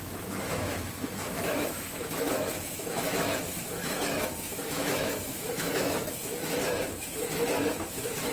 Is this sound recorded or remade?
remade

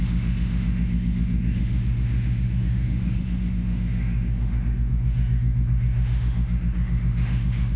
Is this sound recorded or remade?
remade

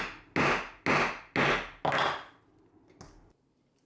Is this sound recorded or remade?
recorded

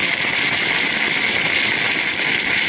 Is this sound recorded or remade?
recorded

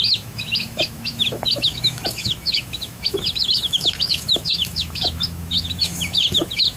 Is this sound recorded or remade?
remade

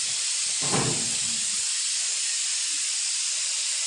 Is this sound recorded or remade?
recorded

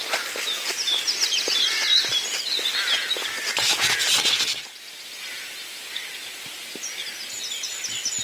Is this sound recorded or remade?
recorded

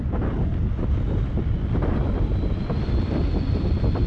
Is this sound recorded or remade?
recorded